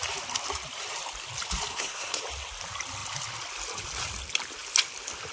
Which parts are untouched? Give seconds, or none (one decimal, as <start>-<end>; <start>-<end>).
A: 0.0-1.7; 2.2-5.3